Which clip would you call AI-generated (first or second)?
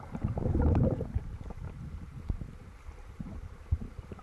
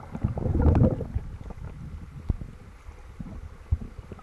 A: first